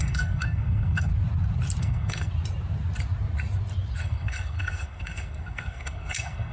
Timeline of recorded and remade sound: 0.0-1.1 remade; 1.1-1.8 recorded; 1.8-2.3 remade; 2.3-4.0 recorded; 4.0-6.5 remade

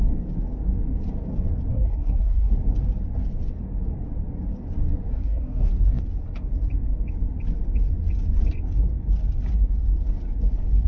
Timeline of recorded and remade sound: 0.0-1.7 recorded; 1.7-2.5 remade; 2.5-5.1 recorded; 5.1-5.7 remade; 5.7-10.9 recorded

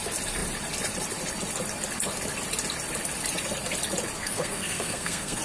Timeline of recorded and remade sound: 0.0-4.2 recorded; 4.2-5.4 remade

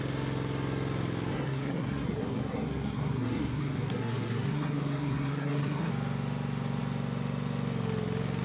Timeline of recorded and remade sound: 0.0-1.3 recorded; 1.3-5.9 remade; 5.9-8.4 recorded